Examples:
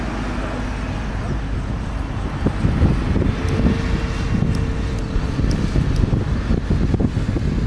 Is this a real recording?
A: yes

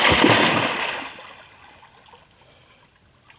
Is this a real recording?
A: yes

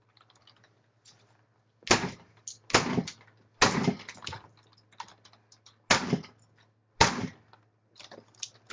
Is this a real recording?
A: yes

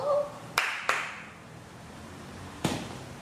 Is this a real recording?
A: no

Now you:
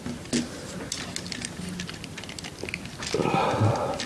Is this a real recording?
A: yes